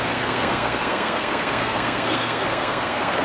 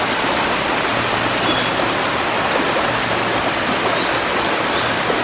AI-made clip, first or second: first